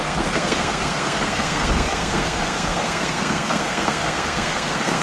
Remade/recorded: remade